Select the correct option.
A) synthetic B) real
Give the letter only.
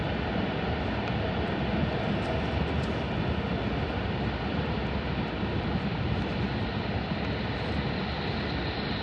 B